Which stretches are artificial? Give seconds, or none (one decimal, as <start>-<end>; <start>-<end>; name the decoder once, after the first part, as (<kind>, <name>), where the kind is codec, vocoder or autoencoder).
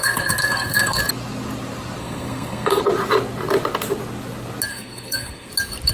0.0-1.0 (codec, SNAC); 2.0-2.8; 4.7-5.5